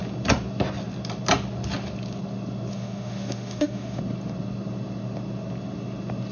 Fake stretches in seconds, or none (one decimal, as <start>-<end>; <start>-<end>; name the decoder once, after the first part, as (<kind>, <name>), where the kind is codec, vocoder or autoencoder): 2.7-4.0 (autoencoder, DAC-VAE)